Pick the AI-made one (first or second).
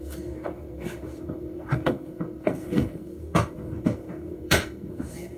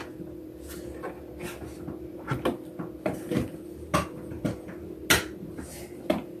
first